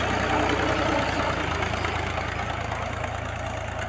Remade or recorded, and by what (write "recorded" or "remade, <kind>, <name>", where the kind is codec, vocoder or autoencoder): recorded